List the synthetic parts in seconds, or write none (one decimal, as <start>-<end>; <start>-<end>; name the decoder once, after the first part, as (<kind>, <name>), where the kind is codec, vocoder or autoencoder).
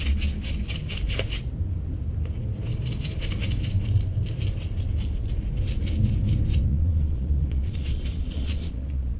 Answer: 6.7-9.2 (vocoder, Vocos)